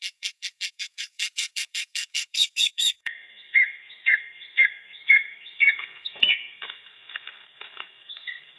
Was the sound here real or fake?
fake